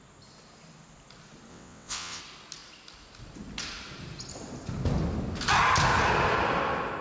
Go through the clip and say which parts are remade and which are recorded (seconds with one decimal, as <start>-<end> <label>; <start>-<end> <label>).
0.0-1.5 recorded; 1.5-2.2 remade; 2.2-7.0 recorded